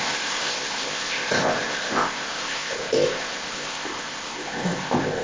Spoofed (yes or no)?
yes